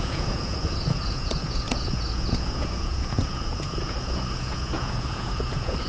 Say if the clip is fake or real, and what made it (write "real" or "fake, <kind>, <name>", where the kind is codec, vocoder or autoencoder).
fake, vocoder, Vocos